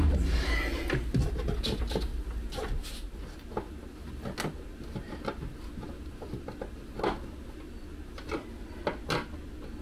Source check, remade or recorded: recorded